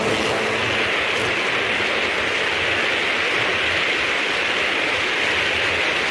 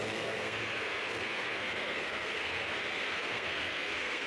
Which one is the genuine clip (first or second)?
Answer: first